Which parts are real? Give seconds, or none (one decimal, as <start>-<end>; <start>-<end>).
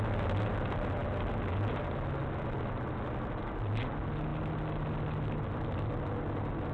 0.0-6.7